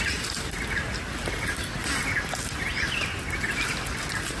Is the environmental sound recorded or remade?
recorded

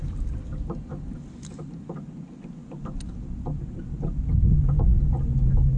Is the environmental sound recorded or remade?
recorded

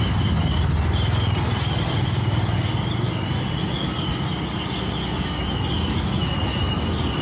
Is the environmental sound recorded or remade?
recorded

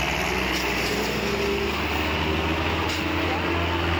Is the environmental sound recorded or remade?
recorded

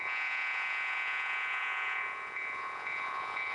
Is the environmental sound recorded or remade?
remade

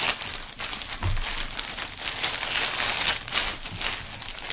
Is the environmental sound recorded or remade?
recorded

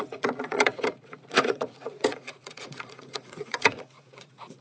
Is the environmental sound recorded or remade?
remade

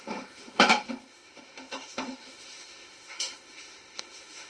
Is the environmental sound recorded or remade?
remade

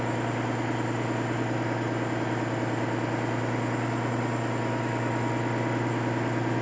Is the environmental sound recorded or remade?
recorded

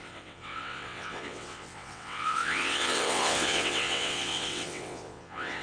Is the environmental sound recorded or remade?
remade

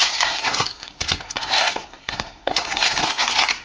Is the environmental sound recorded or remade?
remade